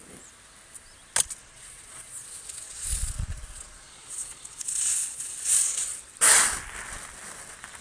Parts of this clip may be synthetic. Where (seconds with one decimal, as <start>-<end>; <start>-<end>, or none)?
1.4-6.1